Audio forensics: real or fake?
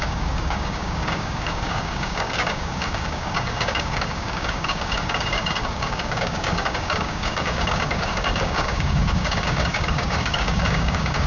fake